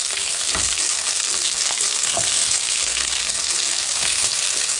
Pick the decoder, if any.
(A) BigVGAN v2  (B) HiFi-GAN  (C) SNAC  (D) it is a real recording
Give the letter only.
C